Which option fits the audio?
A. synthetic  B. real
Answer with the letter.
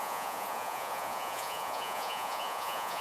A